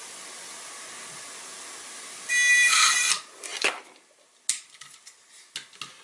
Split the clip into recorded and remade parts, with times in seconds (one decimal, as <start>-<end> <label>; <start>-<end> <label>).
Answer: 0.0-6.0 recorded